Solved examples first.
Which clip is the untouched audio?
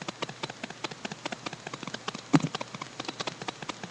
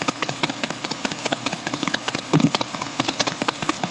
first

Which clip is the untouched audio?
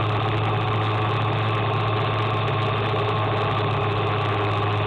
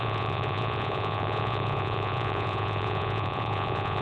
first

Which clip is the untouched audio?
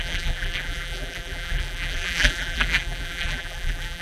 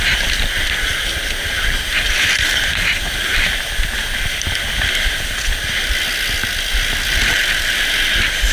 second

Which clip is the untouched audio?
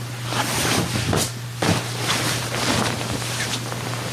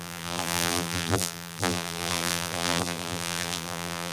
first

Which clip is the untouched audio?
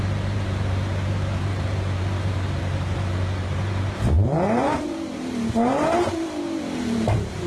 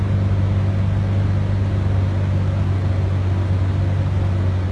second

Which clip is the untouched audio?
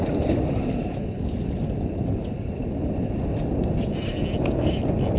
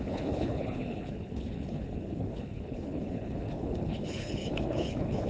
first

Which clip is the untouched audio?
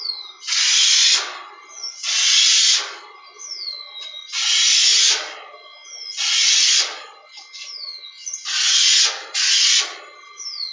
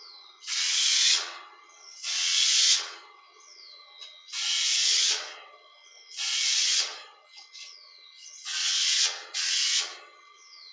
first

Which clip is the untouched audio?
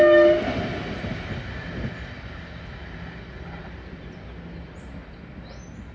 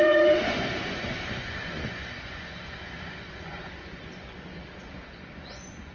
first